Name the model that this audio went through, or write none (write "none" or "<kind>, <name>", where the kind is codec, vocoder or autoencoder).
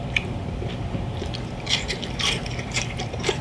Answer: vocoder, BigVGAN v2